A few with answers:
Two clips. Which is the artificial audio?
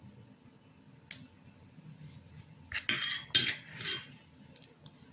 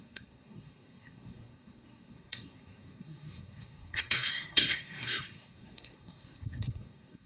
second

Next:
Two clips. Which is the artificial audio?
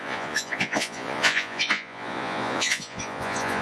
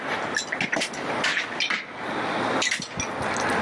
first